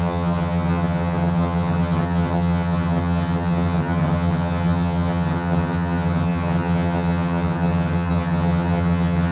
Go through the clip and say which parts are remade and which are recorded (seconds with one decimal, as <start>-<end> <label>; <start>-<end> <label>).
0.0-9.3 remade